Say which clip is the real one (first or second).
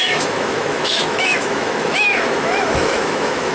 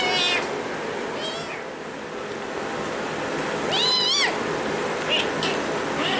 second